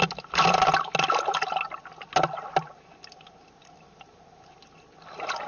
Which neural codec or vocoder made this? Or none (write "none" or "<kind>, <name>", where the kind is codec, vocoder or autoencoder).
none